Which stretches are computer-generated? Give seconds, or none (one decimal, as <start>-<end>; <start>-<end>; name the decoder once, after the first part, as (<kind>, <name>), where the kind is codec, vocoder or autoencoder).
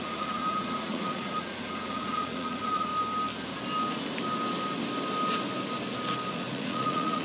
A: 0.0-2.9 (vocoder, Vocos); 6.3-7.2